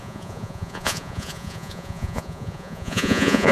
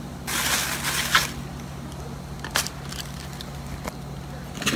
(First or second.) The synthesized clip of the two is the first